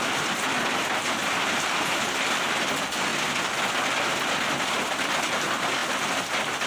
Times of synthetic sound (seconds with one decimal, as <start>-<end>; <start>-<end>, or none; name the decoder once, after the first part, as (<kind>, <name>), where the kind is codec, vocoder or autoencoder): 1.2-2.2 (vocoder, BigVGAN v2)